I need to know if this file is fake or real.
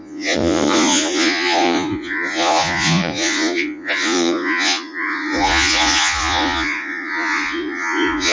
fake